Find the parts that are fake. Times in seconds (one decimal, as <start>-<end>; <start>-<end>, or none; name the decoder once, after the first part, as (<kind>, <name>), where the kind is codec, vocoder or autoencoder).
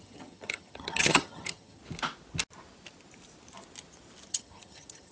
0.0-1.8 (vocoder, HiFi-GAN); 4.3-5.1